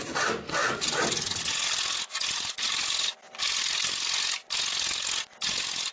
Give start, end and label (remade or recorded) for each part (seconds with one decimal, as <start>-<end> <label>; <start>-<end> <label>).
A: 0.0-5.9 recorded

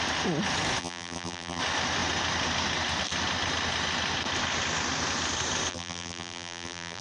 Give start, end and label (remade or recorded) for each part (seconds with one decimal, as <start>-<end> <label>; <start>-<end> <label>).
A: 0.0-0.8 recorded; 0.8-1.6 remade; 1.6-5.7 recorded; 5.7-7.0 remade

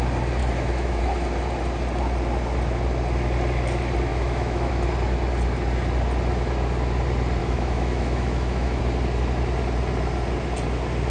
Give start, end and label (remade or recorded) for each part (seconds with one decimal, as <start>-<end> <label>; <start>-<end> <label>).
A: 0.0-0.4 recorded; 0.4-1.0 remade; 1.0-4.1 recorded; 4.1-4.7 remade; 4.7-7.4 recorded; 7.4-8.8 remade; 8.8-11.1 recorded

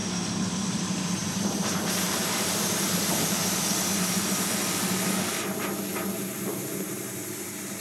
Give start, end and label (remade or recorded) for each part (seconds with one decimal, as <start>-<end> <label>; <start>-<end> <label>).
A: 0.0-0.6 recorded; 0.6-3.4 remade; 3.4-6.1 recorded; 6.1-7.8 remade